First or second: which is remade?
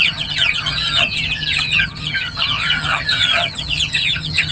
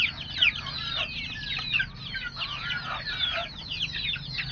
first